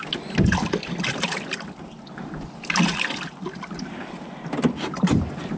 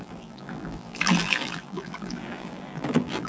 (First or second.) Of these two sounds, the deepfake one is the second